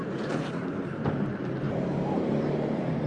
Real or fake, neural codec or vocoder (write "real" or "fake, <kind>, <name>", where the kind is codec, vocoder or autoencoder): fake, vocoder, BigVGAN v2